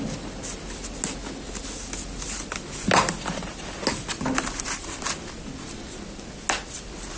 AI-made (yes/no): no